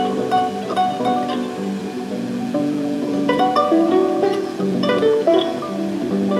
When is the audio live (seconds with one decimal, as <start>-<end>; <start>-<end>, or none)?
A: 0.0-1.8; 5.6-6.4